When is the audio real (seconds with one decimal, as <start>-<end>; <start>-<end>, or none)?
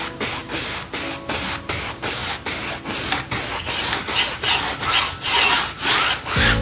0.0-6.6